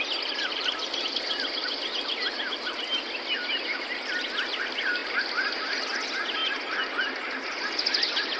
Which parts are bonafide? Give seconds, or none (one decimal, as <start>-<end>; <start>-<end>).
0.0-8.4